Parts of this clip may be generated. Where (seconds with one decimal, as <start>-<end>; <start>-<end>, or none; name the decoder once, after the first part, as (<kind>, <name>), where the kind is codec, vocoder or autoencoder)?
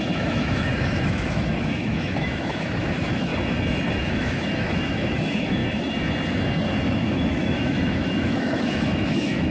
0.0-3.3 (autoencoder, DAC-VAE); 4.0-5.6; 7.0-9.5